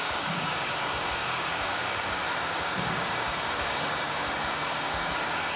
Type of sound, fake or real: fake